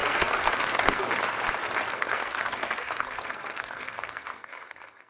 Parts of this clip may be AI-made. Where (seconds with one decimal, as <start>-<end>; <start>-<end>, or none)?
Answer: 0.0-1.0; 1.9-5.1